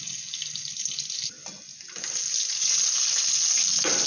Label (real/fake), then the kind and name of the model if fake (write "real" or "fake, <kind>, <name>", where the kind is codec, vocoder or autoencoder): real